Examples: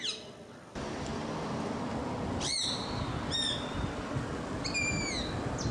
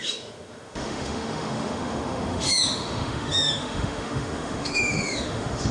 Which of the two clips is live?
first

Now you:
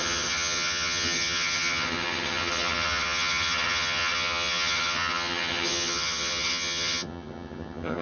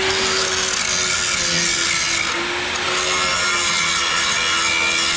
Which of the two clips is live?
second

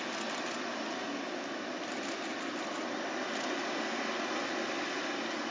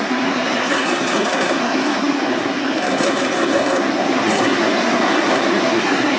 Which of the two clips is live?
first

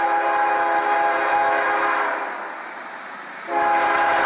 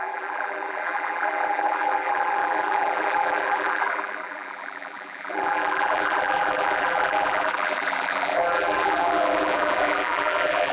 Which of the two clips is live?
first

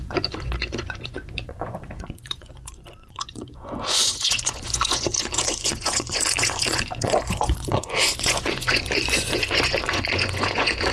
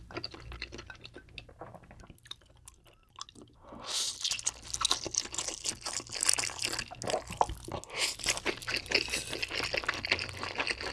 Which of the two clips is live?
second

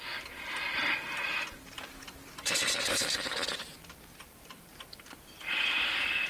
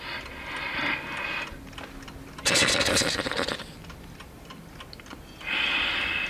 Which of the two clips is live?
second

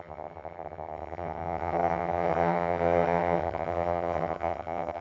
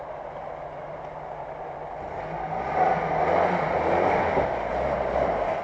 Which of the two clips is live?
second